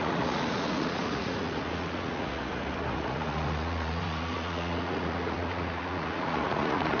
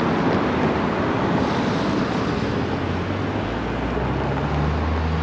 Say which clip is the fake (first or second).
first